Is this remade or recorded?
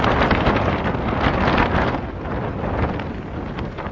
recorded